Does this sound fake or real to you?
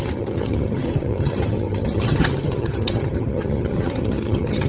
fake